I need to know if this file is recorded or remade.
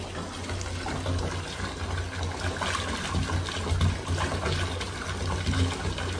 recorded